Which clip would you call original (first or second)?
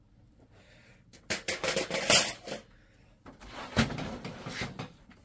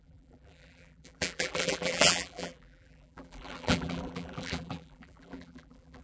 first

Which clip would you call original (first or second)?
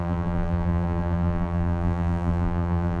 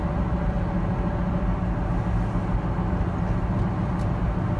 second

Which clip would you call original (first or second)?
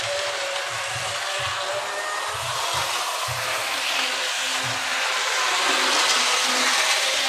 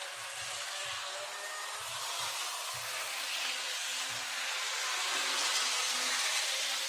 first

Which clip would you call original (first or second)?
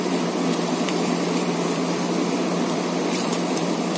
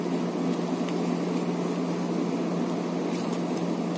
second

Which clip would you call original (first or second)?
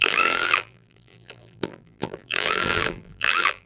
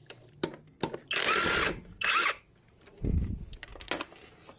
second